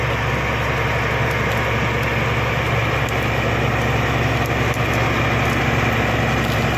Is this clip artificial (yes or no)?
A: no